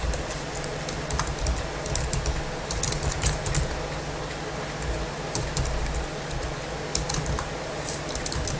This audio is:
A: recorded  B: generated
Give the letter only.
A